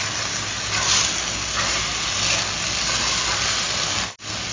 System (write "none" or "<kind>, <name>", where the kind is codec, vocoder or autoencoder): none